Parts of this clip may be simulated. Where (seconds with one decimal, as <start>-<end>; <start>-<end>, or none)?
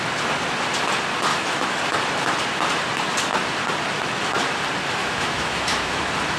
1.3-1.8; 5.0-6.0